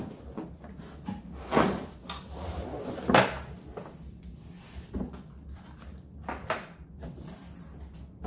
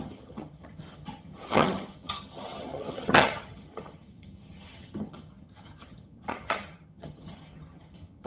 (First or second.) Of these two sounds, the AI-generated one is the second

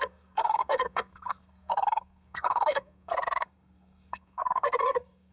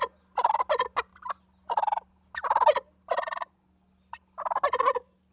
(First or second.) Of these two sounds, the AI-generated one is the first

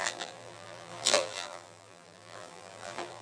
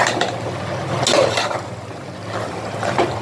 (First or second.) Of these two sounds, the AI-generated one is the first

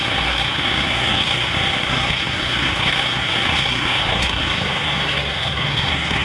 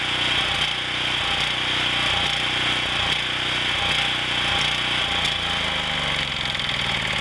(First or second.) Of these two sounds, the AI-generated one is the first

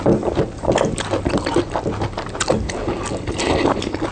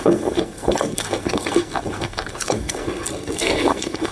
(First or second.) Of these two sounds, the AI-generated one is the second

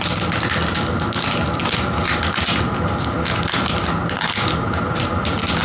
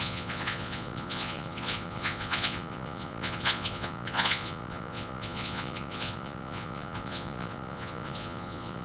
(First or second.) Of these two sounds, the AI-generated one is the second